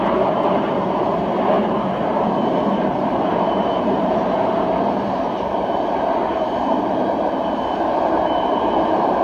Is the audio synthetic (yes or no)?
yes